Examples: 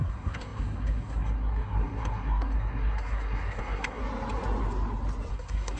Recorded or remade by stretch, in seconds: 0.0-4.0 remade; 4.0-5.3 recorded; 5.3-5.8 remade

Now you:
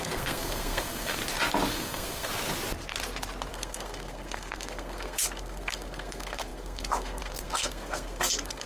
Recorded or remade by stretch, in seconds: 0.0-1.2 remade; 1.2-1.7 recorded; 1.7-2.3 remade; 2.3-3.5 recorded; 3.5-8.7 remade

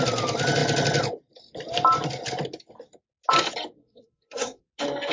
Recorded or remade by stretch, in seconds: 0.0-3.8 recorded; 3.8-4.6 remade; 4.6-5.1 recorded

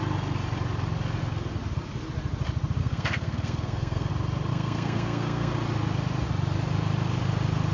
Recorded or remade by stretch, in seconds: 0.0-2.8 recorded; 2.8-4.1 remade; 4.1-4.5 recorded; 4.5-5.5 remade; 5.5-7.7 recorded